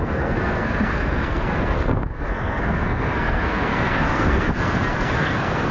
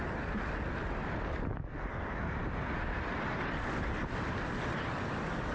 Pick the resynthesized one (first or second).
first